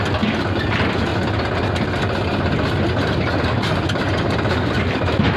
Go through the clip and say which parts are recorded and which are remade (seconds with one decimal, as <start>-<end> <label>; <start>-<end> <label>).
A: 0.0-5.4 recorded